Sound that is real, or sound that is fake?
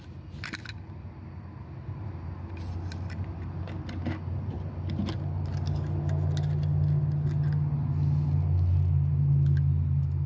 real